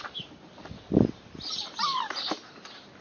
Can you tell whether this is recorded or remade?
recorded